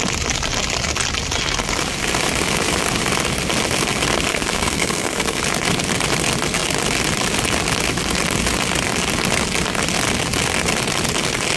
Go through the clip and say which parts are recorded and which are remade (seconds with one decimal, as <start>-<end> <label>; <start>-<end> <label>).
0.0-4.3 recorded; 4.3-5.4 remade; 5.4-11.6 recorded